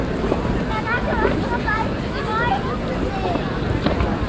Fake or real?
real